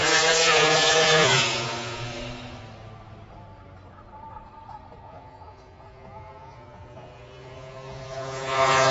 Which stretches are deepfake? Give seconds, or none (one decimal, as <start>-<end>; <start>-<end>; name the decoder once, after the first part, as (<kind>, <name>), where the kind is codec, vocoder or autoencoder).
0.0-2.1 (vocoder, Vocos); 5.0-8.9

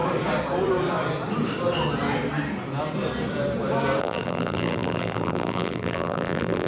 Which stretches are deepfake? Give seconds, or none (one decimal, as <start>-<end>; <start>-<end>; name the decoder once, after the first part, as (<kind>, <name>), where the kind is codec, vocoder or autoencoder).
4.0-6.7 (vocoder, BigVGAN v2)

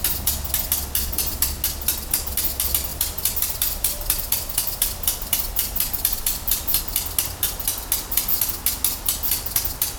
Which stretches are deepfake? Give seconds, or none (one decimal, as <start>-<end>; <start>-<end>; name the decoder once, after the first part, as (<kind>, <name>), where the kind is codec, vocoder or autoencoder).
2.9-6.8 (vocoder, BigVGAN v2)